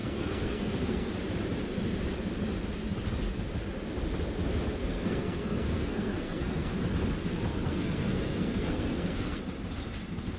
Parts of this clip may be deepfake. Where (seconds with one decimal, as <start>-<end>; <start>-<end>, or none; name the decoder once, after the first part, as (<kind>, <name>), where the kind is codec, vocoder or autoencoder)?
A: 0.0-1.1 (codec, SNAC); 4.8-6.8; 7.5-9.4